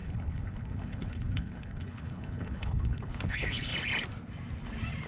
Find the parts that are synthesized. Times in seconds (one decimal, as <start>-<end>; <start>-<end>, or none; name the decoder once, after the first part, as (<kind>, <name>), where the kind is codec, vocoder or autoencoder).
0.0-3.7 (codec, HILCodec)